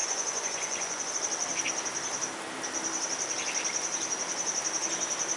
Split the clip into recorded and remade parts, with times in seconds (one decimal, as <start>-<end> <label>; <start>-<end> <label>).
0.0-1.1 remade; 1.1-5.4 recorded